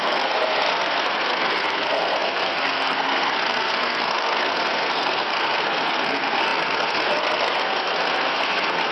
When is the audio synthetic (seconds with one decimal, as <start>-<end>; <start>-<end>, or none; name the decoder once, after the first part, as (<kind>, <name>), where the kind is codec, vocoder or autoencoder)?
0.0-8.9 (codec, SNAC)